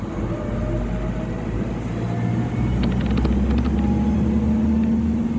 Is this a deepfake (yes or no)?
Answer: no